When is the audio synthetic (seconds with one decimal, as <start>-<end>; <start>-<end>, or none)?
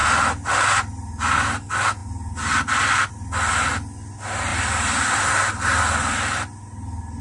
4.5-5.5